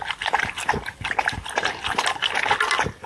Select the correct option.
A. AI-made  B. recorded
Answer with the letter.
B